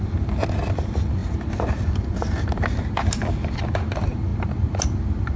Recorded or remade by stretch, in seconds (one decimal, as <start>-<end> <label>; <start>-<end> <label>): 0.0-5.4 recorded